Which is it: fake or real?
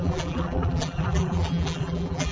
fake